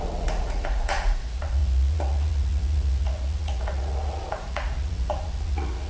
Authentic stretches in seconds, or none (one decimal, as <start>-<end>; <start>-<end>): none